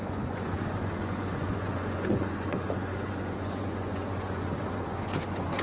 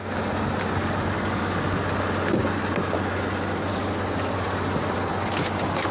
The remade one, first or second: first